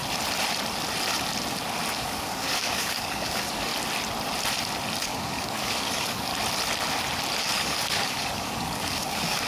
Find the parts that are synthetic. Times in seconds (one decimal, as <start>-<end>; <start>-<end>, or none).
1.9-3.7; 5.0-6.3; 7.4-9.5